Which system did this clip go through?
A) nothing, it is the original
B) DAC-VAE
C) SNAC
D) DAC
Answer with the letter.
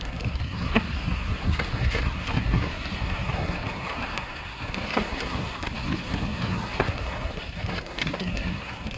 C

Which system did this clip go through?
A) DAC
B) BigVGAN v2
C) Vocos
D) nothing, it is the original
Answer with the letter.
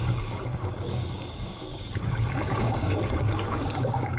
A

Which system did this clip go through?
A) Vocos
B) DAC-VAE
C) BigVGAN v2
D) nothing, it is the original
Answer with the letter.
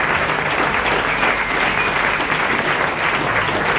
D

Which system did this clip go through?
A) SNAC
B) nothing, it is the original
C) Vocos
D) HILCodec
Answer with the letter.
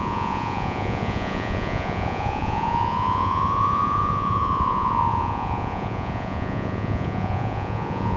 C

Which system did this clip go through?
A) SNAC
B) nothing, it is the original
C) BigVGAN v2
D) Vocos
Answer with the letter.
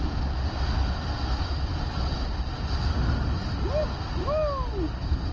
B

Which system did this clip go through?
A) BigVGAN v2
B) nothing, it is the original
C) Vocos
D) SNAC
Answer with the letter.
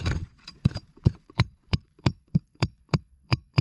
C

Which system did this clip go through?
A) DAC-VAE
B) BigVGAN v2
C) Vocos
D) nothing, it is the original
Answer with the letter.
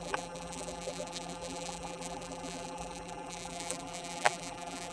B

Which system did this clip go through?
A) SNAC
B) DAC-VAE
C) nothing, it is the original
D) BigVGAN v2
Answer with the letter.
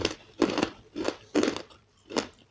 D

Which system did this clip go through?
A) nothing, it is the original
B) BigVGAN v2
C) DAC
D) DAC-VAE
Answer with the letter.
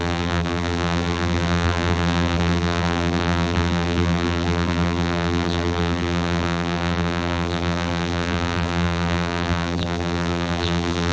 B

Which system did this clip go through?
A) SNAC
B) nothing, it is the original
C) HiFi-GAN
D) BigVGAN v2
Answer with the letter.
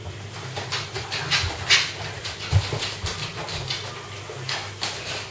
B